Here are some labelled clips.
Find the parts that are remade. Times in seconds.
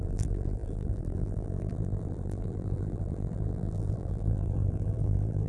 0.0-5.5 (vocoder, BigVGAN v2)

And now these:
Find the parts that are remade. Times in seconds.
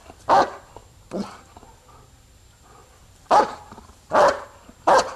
2.8-3.4 (vocoder, BigVGAN v2)